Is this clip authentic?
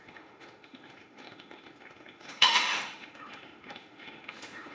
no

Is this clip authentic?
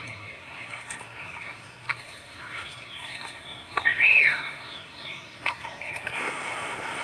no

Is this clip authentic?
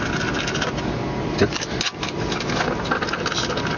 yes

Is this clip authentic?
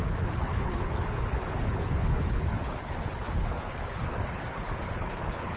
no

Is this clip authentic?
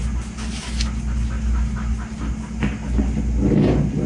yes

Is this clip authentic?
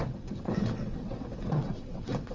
no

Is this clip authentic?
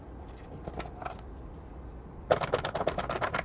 yes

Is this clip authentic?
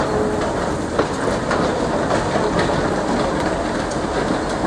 yes